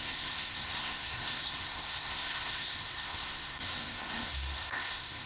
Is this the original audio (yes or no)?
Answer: no